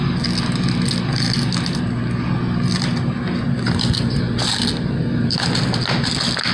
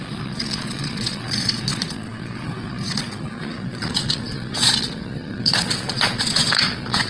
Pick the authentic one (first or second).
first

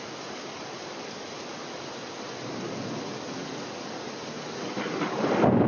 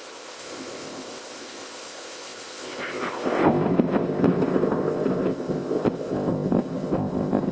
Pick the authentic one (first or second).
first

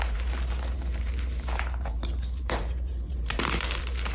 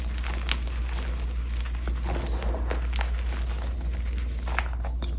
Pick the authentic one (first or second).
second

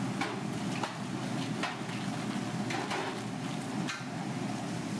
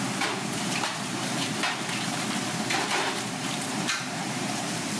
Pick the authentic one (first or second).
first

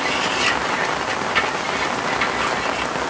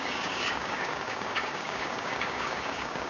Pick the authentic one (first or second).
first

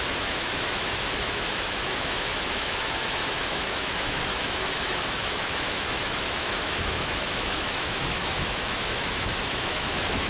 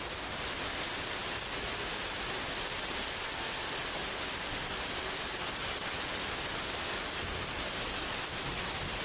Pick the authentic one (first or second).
second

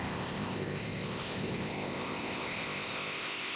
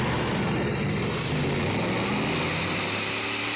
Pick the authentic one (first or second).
second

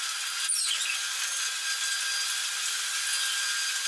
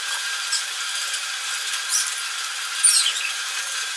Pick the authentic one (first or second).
first